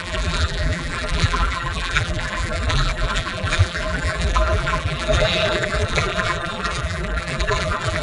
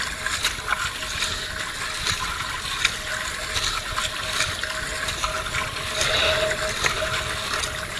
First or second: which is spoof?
first